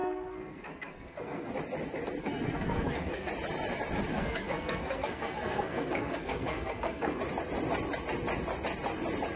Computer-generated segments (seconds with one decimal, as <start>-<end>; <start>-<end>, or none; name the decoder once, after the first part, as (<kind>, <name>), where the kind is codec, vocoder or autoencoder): 0.0-1.5 (codec, SNAC); 2.2-3.3; 4.1-7.2